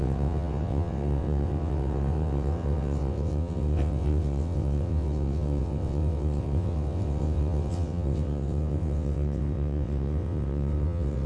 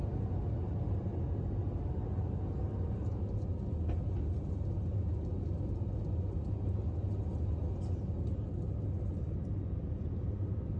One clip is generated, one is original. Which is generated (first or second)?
first